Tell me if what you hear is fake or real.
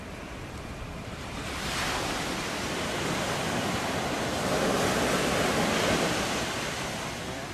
fake